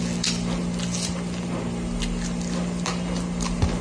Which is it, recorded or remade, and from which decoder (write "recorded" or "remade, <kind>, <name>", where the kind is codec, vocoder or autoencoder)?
recorded